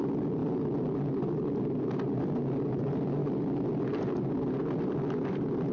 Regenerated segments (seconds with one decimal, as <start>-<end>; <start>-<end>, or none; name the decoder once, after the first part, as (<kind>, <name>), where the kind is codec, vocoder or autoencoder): none